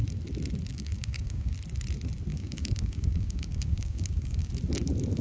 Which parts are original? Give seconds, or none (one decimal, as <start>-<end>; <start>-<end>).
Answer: 0.0-0.7; 1.5-2.3; 4.5-5.2

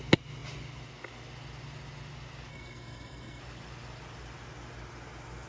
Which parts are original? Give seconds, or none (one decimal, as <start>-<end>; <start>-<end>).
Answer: 0.0-2.5; 3.4-5.5

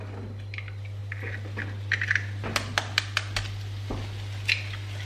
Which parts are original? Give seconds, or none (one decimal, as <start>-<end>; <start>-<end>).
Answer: 0.0-5.1

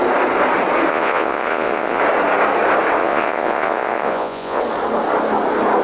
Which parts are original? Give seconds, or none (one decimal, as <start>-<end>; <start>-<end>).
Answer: 0.0-0.9; 2.0-3.0; 4.6-5.8

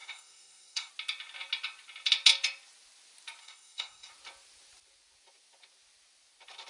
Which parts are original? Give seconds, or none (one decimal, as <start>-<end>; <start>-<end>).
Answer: 0.9-3.4; 4.1-6.7